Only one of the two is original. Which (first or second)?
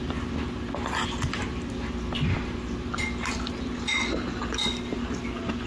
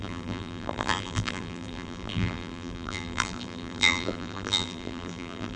first